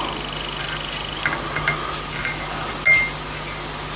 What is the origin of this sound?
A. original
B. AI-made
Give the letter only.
A